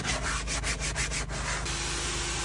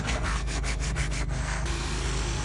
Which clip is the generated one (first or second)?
second